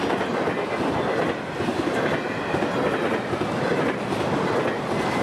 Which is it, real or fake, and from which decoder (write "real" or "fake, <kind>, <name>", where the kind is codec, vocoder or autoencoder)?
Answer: real